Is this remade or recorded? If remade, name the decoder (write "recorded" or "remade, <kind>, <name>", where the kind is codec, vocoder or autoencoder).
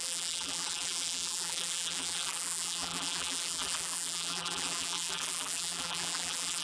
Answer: remade, vocoder, BigVGAN v2